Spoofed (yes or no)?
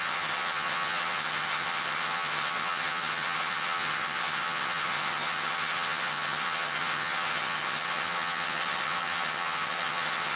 yes